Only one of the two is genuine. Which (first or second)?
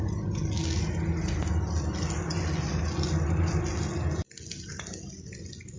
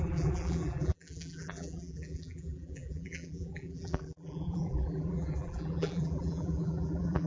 first